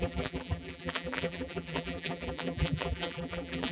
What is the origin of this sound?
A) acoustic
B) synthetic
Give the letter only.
B